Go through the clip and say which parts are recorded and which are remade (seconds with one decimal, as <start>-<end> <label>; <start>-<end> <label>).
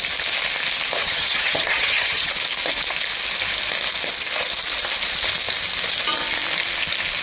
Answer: 0.0-1.0 recorded; 1.0-2.3 remade; 2.3-7.2 recorded